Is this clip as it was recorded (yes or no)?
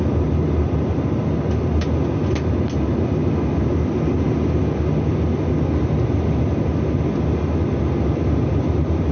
yes